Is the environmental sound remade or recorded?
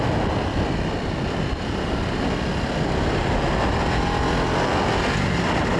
recorded